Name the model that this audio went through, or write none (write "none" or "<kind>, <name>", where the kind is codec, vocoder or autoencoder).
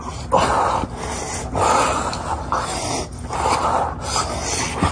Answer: none